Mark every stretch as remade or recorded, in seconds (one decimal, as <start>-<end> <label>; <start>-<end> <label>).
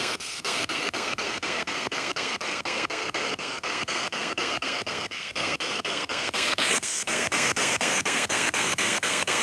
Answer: 0.0-9.4 remade